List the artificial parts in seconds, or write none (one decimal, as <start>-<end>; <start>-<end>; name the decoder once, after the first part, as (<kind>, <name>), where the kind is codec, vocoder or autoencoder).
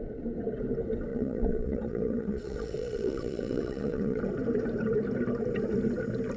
1.1-4.2 (vocoder, WaveNeXt)